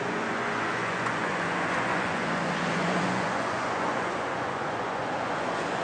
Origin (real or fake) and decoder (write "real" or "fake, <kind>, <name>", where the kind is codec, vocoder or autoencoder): fake, vocoder, Vocos